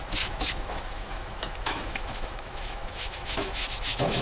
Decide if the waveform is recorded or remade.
remade